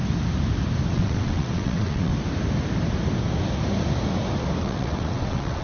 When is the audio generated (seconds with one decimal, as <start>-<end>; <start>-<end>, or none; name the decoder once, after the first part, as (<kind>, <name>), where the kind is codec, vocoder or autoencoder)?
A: 0.9-2.1 (vocoder, WaveNeXt); 4.6-5.6